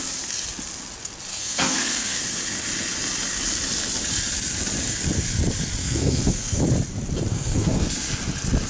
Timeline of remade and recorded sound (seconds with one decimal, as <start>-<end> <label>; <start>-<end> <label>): 0.0-1.3 recorded; 1.3-2.2 remade; 2.2-5.8 recorded; 5.8-6.6 remade; 6.6-7.3 recorded; 7.3-7.9 remade; 7.9-8.7 recorded